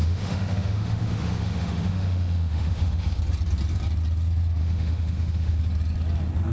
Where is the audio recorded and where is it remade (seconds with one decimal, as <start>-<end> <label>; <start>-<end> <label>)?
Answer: 0.0-3.2 remade; 3.2-4.6 recorded; 4.6-5.6 remade; 5.6-6.5 recorded